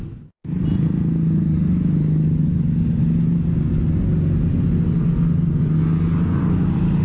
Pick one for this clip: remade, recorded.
recorded